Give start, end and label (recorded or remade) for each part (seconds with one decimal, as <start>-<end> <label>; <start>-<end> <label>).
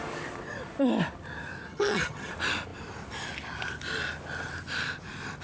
0.0-1.7 recorded; 1.7-2.3 remade; 2.3-5.4 recorded